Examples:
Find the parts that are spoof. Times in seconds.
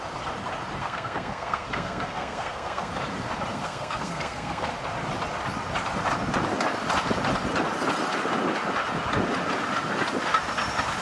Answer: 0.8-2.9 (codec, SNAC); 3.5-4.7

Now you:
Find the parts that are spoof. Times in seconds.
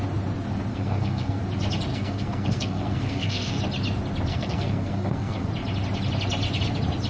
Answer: 0.7-1.4 (codec, SNAC); 1.9-3.6; 4.3-5.5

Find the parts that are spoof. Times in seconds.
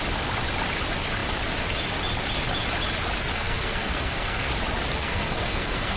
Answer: 3.3-4.5 (codec, SNAC); 5.0-6.0